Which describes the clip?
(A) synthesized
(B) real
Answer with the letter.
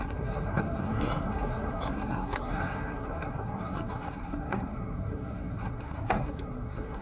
A